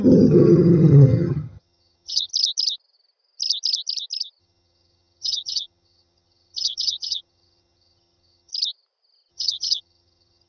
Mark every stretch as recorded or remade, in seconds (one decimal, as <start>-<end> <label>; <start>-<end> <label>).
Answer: 0.0-2.3 remade; 2.3-4.4 recorded; 4.4-8.5 remade; 8.5-9.3 recorded; 9.3-10.5 remade